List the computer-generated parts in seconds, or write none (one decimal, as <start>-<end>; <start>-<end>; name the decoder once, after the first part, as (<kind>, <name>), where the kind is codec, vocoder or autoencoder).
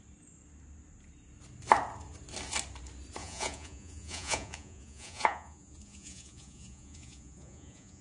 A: 3.2-8.0 (vocoder, Vocos)